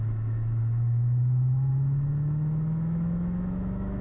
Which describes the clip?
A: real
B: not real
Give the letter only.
B